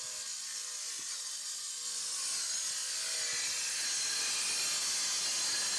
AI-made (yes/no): no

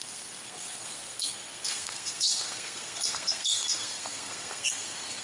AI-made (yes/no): yes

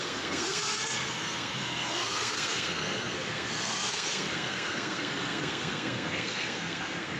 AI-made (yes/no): yes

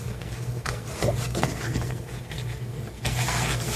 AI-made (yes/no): yes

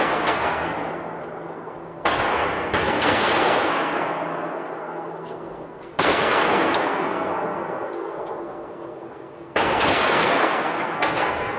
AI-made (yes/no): yes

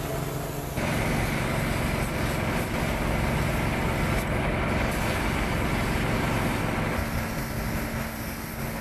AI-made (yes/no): no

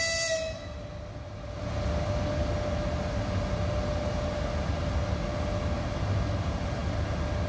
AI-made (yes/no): no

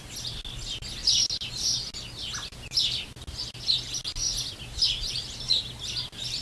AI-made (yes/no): no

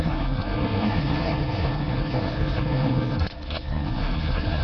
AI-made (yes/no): yes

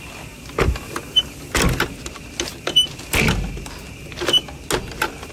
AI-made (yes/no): no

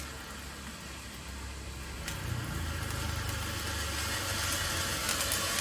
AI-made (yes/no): no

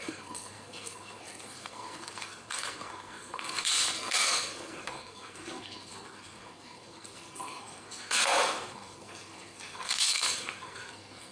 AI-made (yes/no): yes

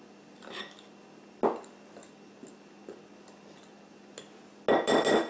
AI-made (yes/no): no